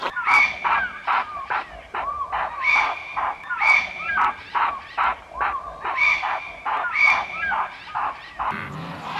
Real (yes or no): no